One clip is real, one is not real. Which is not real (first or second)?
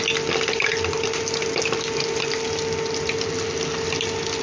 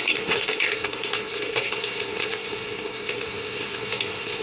second